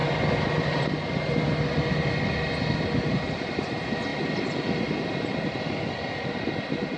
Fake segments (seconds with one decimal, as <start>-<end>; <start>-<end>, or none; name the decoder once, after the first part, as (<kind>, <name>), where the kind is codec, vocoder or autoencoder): none